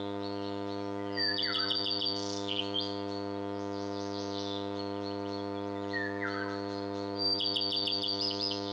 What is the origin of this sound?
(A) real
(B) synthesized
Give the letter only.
B